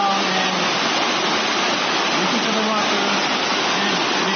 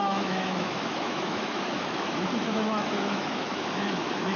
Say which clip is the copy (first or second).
second